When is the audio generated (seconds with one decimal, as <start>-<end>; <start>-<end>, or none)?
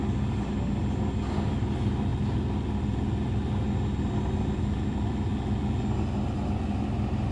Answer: none